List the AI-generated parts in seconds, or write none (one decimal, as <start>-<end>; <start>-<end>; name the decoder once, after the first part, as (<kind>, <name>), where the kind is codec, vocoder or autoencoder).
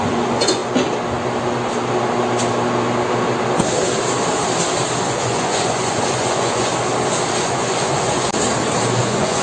0.0-0.6 (vocoder, Vocos); 5.0-6.7; 7.4-8.3; 9.0-9.4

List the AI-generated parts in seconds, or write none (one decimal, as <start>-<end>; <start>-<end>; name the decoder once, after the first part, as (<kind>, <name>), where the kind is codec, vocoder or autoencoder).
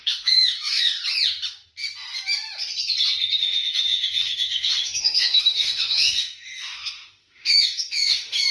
0.0-1.0 (autoencoder, DAC-VAE); 3.4-8.5